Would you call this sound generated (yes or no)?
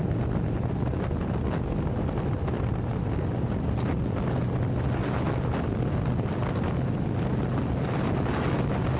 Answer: no